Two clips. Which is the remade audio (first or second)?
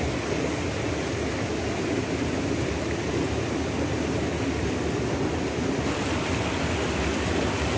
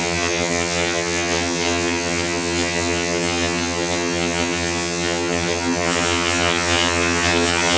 second